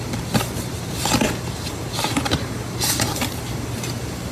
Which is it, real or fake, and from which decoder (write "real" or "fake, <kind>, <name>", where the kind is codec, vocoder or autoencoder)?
fake, vocoder, BigVGAN v2